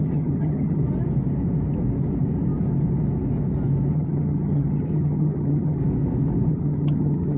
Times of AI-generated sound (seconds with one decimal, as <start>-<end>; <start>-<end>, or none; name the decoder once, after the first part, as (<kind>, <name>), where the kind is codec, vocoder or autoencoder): 0.0-0.8 (vocoder, HiFi-GAN); 3.9-5.8; 6.5-7.4

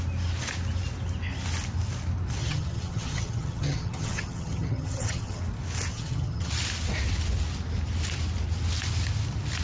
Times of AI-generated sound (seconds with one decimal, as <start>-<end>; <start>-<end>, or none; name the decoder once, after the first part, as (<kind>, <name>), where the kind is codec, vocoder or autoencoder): 2.4-5.4 (vocoder, HiFi-GAN); 5.9-6.5

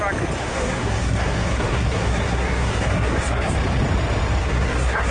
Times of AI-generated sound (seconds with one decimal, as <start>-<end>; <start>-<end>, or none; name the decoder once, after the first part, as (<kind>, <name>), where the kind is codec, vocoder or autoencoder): 0.4-3.5 (codec, SNAC); 4.4-5.1

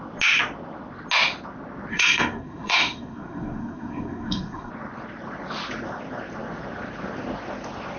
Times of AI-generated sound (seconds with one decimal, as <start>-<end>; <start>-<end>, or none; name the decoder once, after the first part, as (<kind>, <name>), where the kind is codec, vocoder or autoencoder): 1.9-4.7 (codec, SNAC)

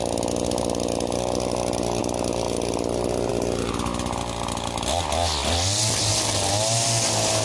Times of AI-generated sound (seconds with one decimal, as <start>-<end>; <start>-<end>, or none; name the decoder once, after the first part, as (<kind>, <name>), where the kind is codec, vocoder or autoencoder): none

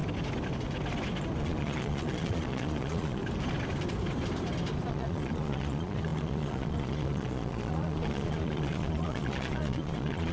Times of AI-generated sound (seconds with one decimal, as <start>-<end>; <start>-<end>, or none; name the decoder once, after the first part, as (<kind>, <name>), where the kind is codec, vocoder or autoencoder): 1.4-3.2 (vocoder, Vocos); 4.9-10.3

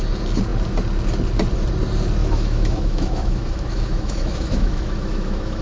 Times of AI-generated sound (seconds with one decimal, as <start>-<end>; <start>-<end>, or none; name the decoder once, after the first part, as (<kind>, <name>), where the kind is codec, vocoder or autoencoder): 2.2-5.6 (autoencoder, DAC-VAE)

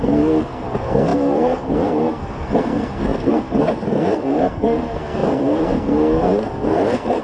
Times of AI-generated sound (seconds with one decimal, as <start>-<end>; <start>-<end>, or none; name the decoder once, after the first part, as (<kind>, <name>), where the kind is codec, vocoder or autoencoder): 0.0-7.2 (codec, SNAC)